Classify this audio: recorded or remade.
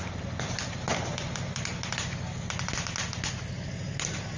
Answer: recorded